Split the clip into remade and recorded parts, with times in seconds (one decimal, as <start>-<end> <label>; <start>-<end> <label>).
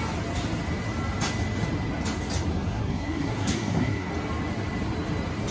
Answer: 0.0-2.5 recorded; 2.5-4.1 remade; 4.1-5.5 recorded